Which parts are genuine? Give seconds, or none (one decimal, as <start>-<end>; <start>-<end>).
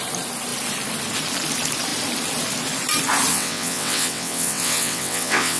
0.0-3.3